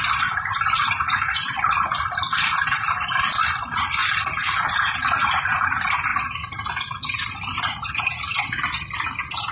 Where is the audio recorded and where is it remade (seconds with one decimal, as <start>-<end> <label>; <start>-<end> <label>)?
0.0-4.0 remade; 4.0-5.3 recorded; 5.3-9.5 remade